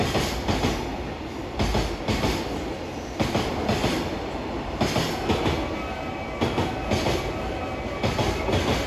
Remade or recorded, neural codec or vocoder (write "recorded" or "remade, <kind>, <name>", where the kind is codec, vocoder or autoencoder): recorded